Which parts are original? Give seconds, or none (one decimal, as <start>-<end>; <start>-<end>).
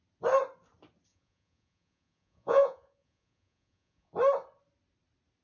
0.0-1.1; 4.1-5.4